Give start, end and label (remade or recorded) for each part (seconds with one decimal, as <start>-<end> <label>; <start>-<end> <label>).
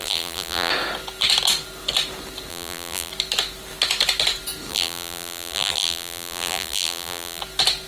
0.0-0.7 remade; 0.7-2.5 recorded; 2.5-3.1 remade; 3.1-4.7 recorded; 4.7-7.4 remade; 7.4-7.9 recorded